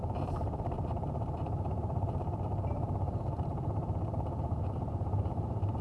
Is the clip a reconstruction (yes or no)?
yes